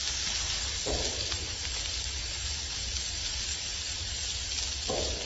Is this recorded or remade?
recorded